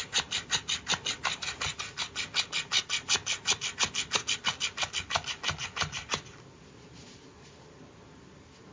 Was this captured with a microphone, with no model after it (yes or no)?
yes